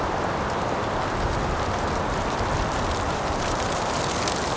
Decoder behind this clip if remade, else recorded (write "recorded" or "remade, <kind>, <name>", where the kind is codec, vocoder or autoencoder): recorded